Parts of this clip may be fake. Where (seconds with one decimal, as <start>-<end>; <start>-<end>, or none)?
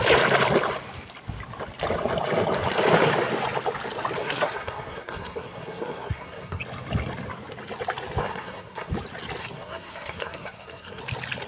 4.2-6.6; 8.2-8.9; 9.4-11.0